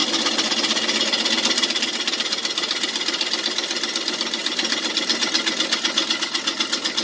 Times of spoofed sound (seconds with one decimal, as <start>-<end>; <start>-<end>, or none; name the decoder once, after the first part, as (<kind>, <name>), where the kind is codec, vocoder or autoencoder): none